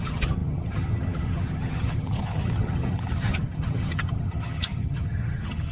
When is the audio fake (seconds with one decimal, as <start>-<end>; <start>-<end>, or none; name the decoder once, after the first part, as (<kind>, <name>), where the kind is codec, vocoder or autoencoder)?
0.0-5.7 (vocoder, HiFi-GAN)